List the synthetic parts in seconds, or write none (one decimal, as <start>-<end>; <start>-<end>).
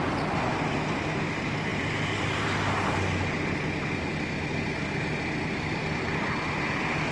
none